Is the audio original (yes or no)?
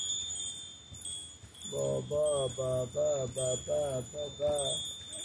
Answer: yes